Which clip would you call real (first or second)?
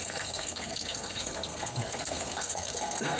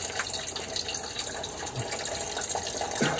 second